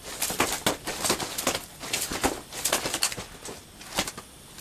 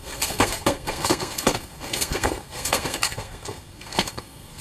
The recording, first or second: first